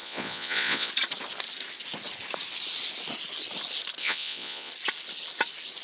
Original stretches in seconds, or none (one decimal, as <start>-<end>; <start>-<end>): 0.9-4.0; 4.7-5.8